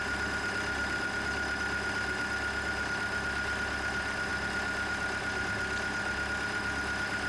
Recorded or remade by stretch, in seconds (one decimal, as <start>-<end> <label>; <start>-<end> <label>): 0.0-7.3 recorded